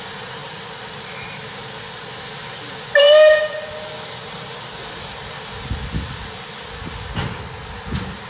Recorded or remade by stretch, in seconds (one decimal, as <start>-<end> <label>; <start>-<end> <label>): 0.0-8.3 recorded